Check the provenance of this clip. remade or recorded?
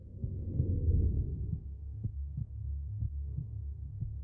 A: remade